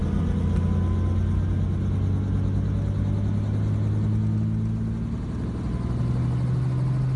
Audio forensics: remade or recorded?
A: recorded